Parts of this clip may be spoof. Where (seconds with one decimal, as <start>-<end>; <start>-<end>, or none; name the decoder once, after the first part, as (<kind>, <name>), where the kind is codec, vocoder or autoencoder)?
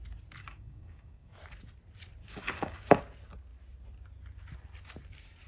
0.4-1.3 (codec, DAC); 2.2-3.0